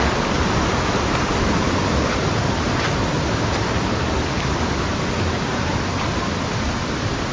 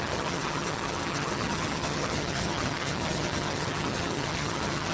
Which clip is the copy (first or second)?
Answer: second